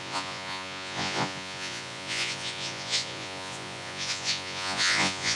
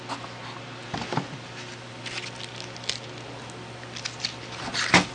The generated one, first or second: first